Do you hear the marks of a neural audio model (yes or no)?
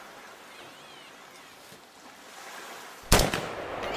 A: no